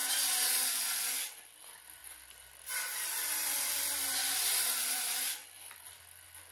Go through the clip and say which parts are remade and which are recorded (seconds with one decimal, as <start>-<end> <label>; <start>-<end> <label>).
0.0-2.0 recorded; 2.0-5.8 remade; 5.8-6.5 recorded

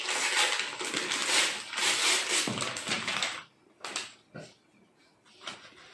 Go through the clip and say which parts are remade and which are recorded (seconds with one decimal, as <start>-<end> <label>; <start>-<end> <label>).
0.0-5.9 recorded

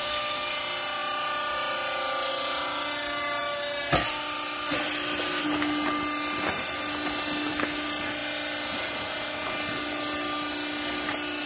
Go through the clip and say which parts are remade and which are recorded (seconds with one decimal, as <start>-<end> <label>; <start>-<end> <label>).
0.0-0.5 remade; 0.5-11.5 recorded

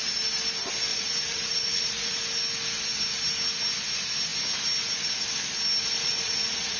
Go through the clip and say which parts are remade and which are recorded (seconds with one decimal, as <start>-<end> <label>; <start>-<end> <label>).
0.0-0.9 recorded; 0.9-2.2 remade; 2.2-5.8 recorded; 5.8-6.8 remade